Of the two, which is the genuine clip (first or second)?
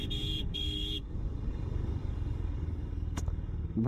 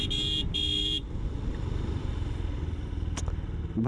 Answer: second